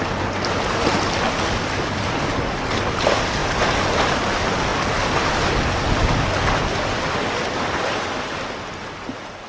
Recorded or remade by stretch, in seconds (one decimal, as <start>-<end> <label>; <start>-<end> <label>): 0.0-9.5 recorded